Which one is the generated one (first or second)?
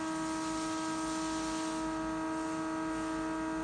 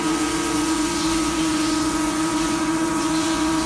second